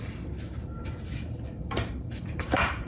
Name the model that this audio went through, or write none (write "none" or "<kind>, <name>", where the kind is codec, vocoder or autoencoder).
vocoder, BigVGAN v2